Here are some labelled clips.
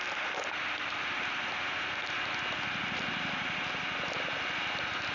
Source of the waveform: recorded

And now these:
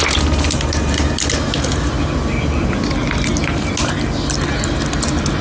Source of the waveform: recorded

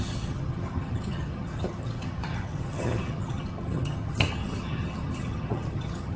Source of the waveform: remade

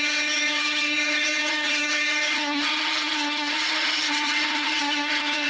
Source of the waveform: remade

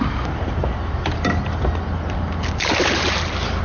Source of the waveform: recorded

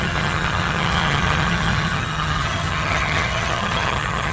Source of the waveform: remade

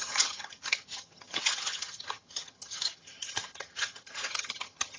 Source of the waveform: remade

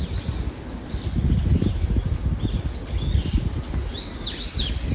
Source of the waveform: recorded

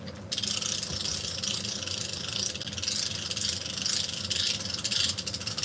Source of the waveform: recorded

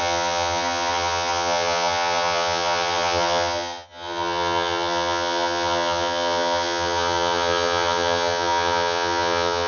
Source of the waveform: remade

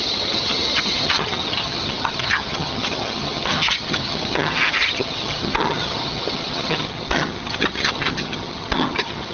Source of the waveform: remade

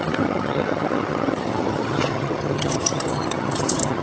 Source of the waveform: remade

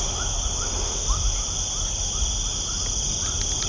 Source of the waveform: recorded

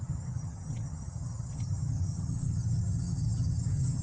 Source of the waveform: remade